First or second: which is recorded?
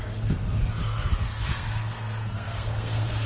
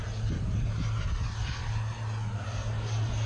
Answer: second